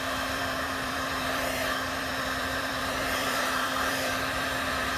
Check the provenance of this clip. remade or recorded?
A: remade